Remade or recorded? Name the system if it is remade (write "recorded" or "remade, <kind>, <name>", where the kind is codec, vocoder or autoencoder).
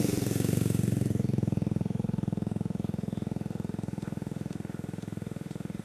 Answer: remade, autoencoder, DAC-VAE